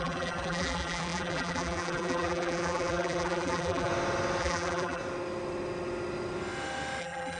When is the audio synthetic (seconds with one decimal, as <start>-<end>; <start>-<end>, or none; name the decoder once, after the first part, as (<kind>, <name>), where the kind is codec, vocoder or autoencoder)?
0.0-3.9 (vocoder, BigVGAN v2); 4.4-5.0; 7.0-7.4